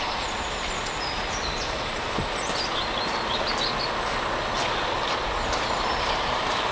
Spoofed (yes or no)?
no